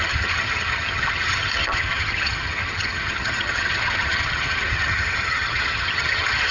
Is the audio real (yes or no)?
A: no